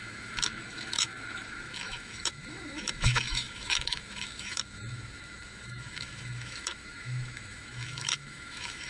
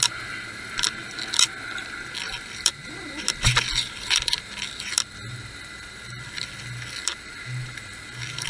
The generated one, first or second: first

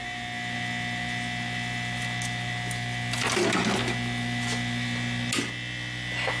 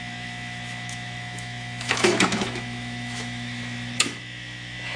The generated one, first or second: second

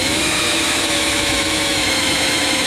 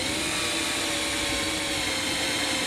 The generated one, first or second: first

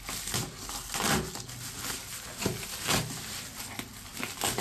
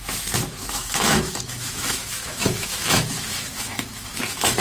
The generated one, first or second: second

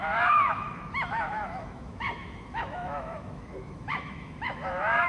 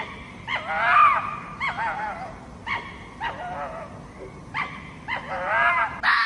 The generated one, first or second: first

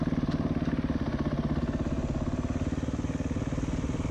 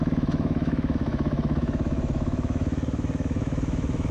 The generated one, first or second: second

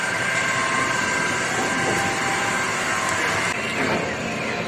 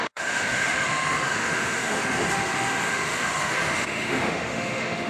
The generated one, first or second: second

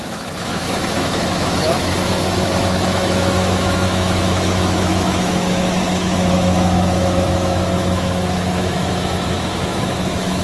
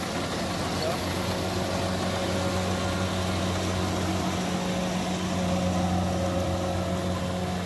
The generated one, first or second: first